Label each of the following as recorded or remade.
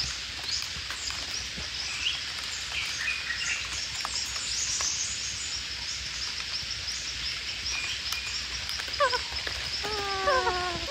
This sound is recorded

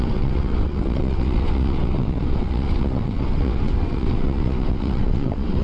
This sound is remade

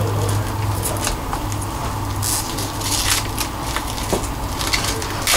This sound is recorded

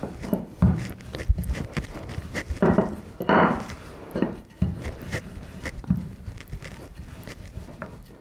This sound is remade